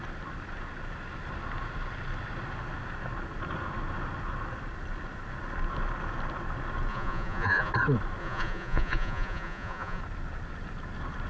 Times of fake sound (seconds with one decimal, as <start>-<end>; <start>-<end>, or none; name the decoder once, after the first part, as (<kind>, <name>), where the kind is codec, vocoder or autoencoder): 6.9-7.7 (vocoder, Vocos); 8.2-10.0